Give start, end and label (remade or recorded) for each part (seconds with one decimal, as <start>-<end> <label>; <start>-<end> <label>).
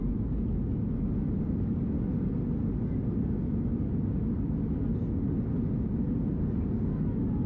0.0-7.5 recorded